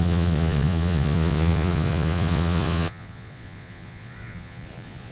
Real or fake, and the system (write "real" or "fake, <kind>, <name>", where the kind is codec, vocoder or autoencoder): fake, vocoder, Vocos